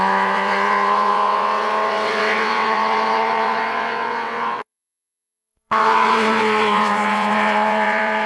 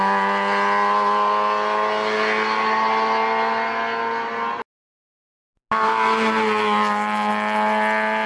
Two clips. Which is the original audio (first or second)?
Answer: second